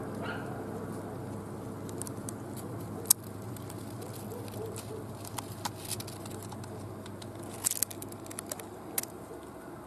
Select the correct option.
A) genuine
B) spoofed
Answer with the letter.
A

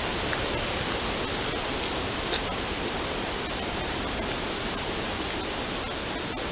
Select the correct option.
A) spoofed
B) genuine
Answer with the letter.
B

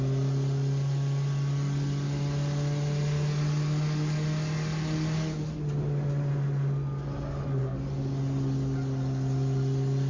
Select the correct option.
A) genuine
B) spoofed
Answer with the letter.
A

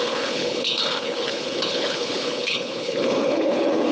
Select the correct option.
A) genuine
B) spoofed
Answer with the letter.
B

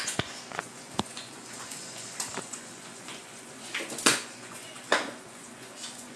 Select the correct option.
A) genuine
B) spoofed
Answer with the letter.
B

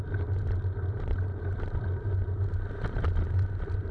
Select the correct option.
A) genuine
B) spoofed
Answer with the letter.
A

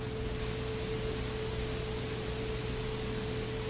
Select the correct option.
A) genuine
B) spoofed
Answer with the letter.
A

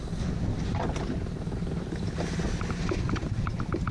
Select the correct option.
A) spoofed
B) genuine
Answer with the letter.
B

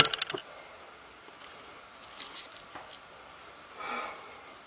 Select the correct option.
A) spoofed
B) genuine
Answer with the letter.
B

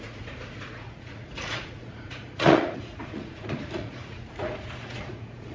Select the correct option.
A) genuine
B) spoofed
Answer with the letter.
B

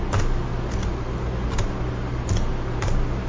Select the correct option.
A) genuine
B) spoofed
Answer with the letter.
A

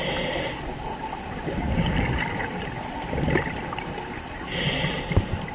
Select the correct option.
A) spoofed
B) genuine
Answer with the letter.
B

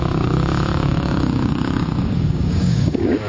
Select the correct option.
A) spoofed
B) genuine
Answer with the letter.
A